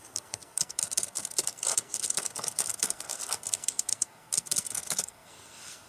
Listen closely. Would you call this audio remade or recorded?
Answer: remade